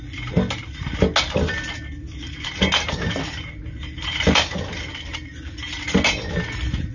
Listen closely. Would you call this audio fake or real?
real